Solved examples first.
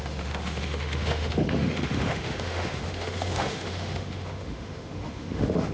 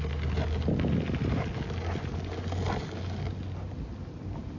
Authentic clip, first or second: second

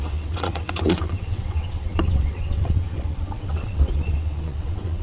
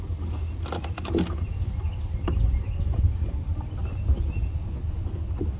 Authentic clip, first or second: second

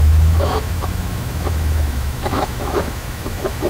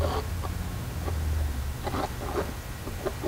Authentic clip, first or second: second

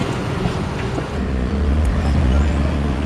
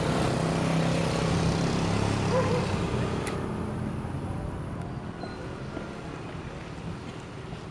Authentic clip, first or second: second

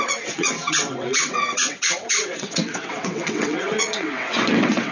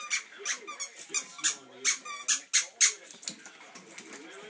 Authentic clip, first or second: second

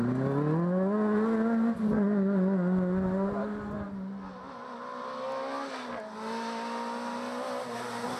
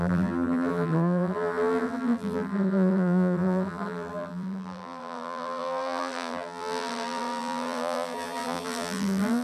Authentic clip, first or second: first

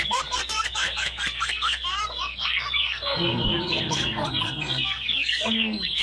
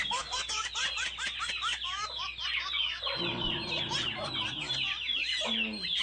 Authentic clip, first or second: second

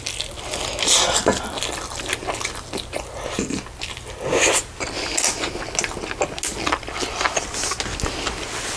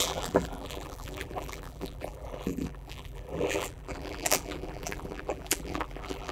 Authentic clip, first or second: first